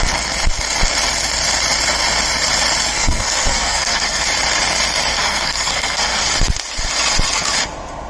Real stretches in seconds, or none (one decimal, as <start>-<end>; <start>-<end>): 0.0-2.9; 4.2-5.1; 6.2-8.1